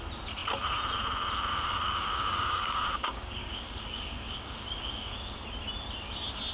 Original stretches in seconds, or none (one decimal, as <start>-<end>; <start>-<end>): 0.0-1.5; 5.4-6.5